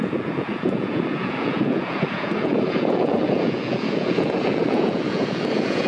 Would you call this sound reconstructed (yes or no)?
yes